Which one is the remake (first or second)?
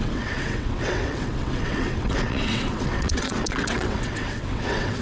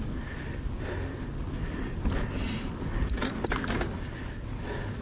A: first